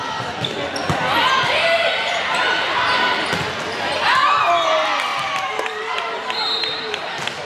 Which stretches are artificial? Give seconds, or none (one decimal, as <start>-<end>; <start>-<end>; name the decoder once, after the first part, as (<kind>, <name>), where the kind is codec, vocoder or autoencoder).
5.1-6.9 (vocoder, BigVGAN v2)